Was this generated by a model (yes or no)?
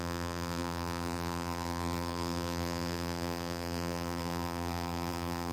yes